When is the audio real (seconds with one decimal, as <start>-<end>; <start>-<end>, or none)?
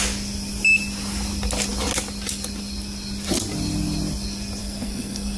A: 0.0-4.6